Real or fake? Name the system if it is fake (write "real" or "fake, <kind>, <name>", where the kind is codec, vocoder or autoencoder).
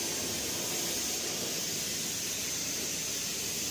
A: real